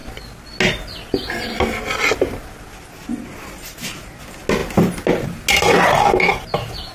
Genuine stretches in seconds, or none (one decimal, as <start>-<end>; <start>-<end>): 0.0-6.9